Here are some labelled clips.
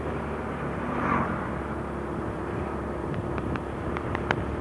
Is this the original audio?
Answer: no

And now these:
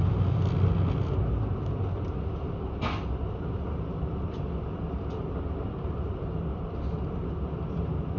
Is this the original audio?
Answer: yes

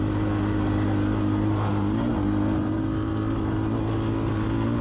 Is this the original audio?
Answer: yes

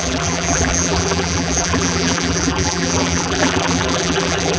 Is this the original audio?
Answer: no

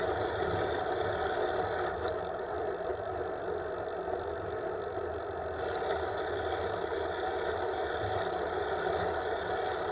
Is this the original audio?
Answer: yes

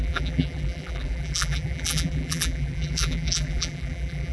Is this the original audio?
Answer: no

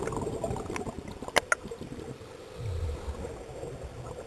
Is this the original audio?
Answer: yes